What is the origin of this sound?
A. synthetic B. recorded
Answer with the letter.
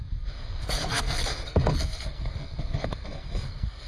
A